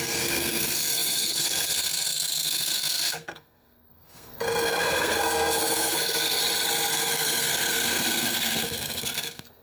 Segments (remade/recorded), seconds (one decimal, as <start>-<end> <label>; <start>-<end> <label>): 0.0-6.4 remade; 6.4-6.9 recorded; 6.9-9.6 remade